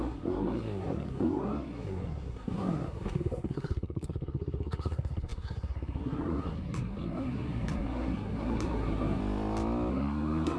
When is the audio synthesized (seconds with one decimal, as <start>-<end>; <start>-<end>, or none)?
0.0-9.2; 9.9-10.6